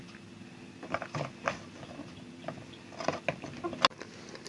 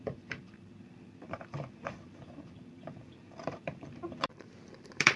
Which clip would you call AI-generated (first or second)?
second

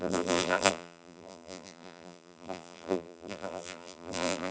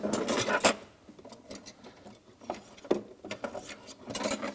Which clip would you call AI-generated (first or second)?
first